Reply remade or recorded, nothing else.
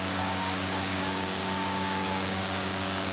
remade